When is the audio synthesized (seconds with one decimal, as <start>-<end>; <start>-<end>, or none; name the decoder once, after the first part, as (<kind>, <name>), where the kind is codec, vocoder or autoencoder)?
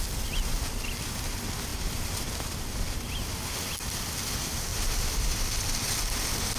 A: none